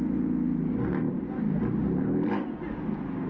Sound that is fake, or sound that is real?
real